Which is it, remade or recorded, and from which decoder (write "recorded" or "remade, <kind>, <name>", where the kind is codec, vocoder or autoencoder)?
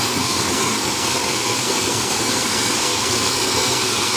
remade, codec, SNAC